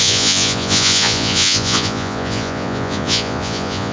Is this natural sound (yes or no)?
no